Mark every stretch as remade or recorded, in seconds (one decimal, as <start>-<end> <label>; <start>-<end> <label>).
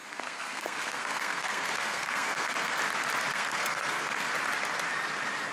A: 0.0-2.8 remade; 2.8-3.3 recorded; 3.3-4.3 remade; 4.3-5.5 recorded